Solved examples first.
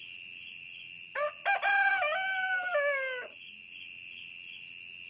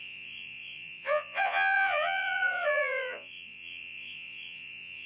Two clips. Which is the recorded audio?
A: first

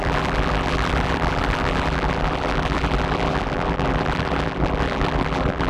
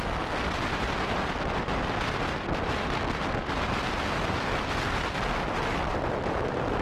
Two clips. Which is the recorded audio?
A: second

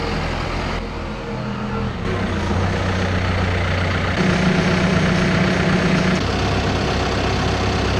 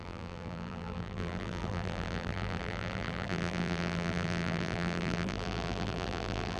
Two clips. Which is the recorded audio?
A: first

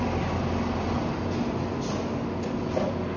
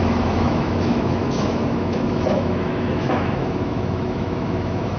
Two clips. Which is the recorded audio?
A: first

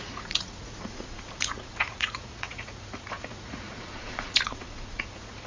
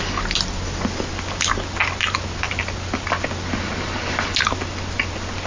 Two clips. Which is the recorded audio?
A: second